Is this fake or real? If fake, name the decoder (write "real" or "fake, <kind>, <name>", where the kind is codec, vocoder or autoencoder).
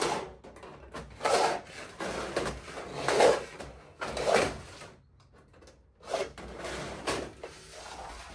real